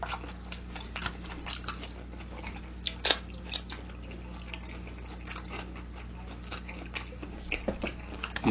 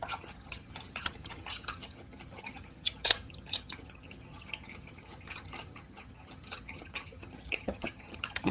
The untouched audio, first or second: first